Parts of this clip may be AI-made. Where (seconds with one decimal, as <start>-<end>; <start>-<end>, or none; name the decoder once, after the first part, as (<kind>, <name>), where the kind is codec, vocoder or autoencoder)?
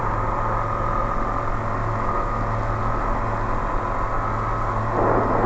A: 1.8-2.4 (autoencoder, DAC-VAE)